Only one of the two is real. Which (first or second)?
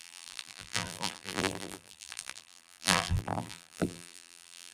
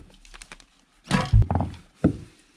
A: second